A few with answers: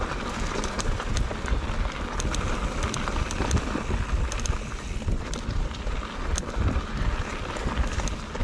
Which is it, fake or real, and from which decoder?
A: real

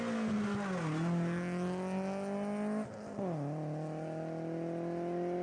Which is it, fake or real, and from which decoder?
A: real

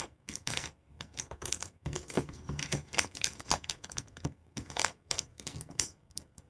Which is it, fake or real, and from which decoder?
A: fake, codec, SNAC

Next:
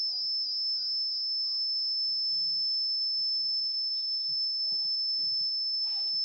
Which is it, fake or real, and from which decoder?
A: real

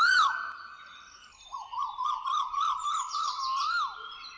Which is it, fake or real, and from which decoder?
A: real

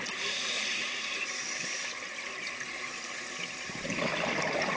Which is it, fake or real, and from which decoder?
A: real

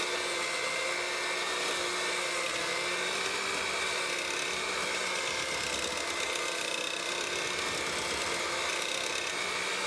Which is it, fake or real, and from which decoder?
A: real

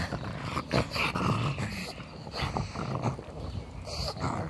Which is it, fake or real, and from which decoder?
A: real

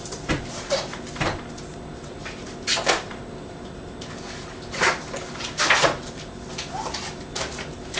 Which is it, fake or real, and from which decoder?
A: real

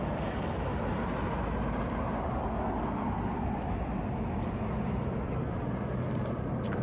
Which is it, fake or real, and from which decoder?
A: real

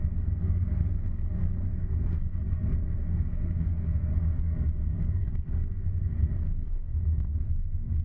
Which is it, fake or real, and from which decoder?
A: fake, codec, SNAC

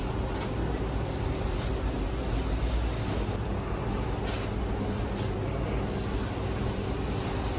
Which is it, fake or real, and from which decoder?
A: real